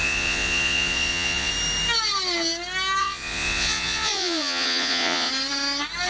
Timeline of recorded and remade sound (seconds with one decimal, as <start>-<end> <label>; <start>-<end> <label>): 0.0-1.5 remade; 1.5-3.0 recorded; 3.0-5.3 remade; 5.3-6.1 recorded